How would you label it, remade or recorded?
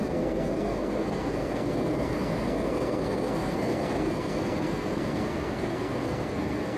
remade